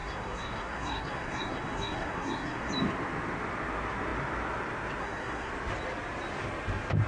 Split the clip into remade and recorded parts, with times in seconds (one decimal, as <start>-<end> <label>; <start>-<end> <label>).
0.0-2.7 remade; 2.7-5.0 recorded; 5.0-5.5 remade; 5.5-7.1 recorded